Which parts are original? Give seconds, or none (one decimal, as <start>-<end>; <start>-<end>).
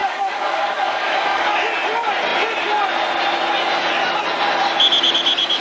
1.7-5.6